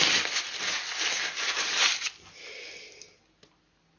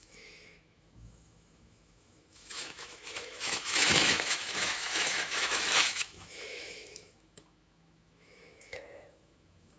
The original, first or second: first